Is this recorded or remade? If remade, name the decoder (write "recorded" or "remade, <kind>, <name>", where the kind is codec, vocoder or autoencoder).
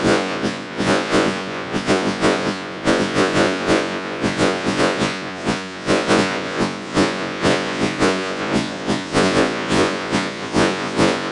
remade, vocoder, Vocos